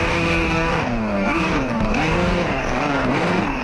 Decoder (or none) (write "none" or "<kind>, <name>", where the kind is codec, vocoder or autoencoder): codec, DAC